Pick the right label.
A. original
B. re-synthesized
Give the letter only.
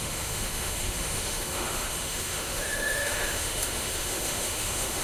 B